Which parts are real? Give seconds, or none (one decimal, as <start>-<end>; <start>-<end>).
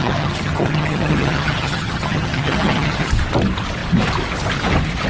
3.1-5.1